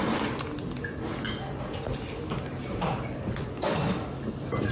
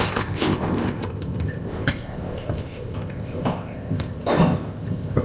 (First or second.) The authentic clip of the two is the first